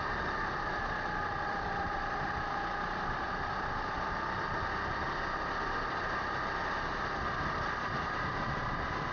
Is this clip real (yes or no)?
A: yes